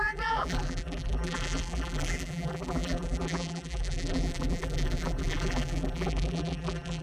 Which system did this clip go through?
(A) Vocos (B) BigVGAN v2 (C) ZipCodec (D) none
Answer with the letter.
B